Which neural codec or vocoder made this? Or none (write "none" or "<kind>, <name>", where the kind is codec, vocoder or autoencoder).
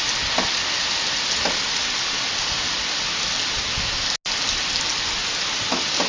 none